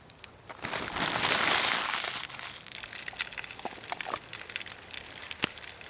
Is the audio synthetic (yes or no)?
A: no